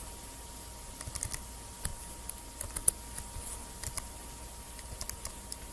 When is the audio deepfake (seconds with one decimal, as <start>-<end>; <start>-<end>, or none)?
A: none